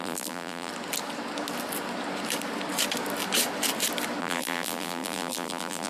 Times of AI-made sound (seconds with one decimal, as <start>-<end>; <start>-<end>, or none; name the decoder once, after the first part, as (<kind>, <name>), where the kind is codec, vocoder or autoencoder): 0.0-0.7 (vocoder, BigVGAN v2); 4.2-5.9